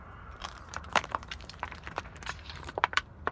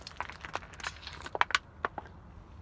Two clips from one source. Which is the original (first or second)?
second